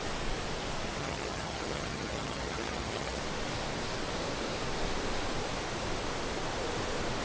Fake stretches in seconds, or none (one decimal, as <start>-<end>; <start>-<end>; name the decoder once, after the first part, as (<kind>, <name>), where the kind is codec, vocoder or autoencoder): 1.0-3.2 (vocoder, HiFi-GAN)

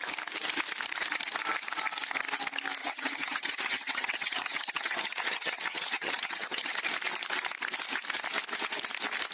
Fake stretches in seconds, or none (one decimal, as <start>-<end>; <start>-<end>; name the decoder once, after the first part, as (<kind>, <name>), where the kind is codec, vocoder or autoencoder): 2.8-6.8 (vocoder, HiFi-GAN)

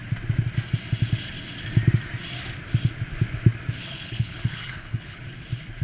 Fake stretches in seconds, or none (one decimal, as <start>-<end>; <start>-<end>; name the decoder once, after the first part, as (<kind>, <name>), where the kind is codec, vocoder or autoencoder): 3.8-5.2 (codec, HILCodec)

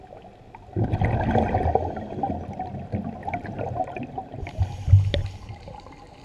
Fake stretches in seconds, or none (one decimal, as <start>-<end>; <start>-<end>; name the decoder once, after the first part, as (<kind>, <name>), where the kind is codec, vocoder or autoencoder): 3.2-3.8 (vocoder, BigVGAN v2)

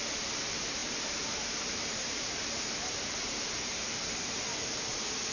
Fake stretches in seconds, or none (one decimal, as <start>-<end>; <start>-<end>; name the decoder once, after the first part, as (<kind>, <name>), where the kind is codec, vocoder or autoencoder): 0.0-5.3 (vocoder, BigVGAN v2)

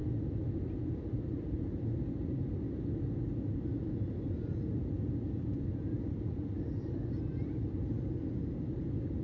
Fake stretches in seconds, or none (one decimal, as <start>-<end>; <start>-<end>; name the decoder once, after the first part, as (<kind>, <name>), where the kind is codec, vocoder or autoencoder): none

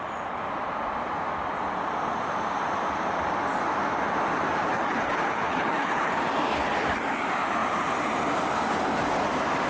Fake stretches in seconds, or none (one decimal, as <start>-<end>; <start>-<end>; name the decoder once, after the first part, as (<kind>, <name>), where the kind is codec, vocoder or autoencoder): 4.6-6.1 (codec, HILCodec)